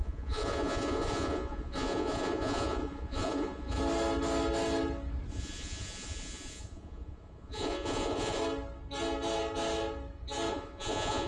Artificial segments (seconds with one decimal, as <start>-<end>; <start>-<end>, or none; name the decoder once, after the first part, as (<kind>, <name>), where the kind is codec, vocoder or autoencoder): 0.0-3.8 (vocoder, Vocos); 5.3-8.4; 10.5-11.3